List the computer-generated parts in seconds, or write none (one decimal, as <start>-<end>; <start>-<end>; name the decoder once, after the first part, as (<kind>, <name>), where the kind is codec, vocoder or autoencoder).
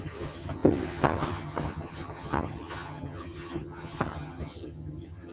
0.0-5.3 (vocoder, HiFi-GAN)